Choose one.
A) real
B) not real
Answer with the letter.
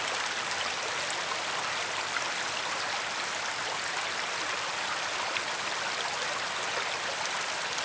A